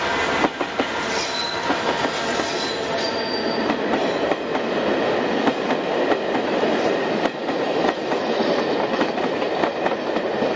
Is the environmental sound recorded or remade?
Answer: recorded